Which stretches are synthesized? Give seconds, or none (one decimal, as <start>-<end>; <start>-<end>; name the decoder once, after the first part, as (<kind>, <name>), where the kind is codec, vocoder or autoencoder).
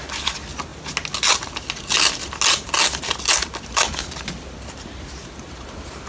none